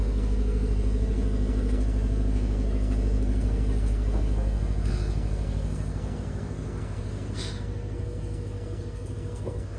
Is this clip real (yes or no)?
no